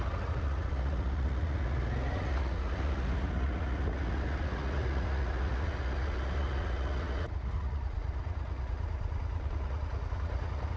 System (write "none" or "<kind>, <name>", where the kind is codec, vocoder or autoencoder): vocoder, Vocos